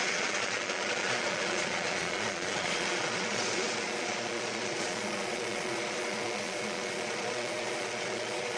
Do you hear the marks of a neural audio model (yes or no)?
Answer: yes